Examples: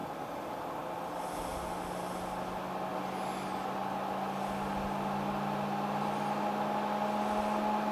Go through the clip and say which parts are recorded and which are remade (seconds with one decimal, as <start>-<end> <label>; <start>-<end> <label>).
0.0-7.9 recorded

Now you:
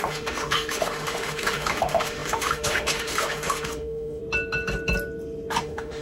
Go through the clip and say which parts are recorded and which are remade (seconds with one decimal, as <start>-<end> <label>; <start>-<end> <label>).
0.0-4.2 remade; 4.2-5.6 recorded; 5.6-6.0 remade

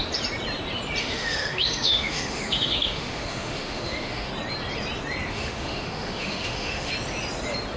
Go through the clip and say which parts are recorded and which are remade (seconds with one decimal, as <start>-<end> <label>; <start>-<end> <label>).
0.0-1.0 recorded; 1.0-4.3 remade; 4.3-5.3 recorded; 5.3-6.9 remade; 6.9-7.8 recorded

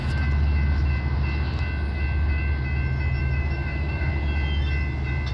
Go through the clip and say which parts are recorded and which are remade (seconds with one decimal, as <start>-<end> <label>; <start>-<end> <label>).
0.0-3.2 recorded; 3.2-4.1 remade; 4.1-5.3 recorded

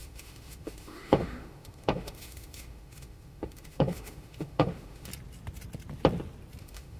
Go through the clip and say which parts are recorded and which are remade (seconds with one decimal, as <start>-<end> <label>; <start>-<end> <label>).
0.0-5.1 remade; 5.1-6.6 recorded; 6.6-7.0 remade

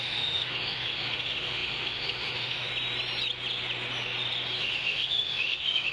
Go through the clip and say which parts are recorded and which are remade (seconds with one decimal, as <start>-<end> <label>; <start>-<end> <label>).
0.0-2.7 remade; 2.7-4.6 recorded; 4.6-5.9 remade

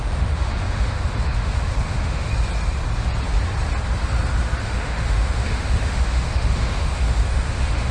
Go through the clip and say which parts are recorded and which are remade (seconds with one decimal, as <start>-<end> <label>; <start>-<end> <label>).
0.0-2.3 remade; 2.3-4.6 recorded; 4.6-7.9 remade

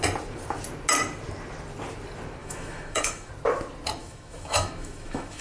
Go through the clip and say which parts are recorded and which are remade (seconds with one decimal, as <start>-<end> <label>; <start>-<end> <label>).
0.0-2.4 recorded; 2.4-3.3 remade; 3.3-4.0 recorded; 4.0-5.4 remade